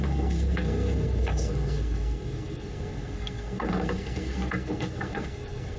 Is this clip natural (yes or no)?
no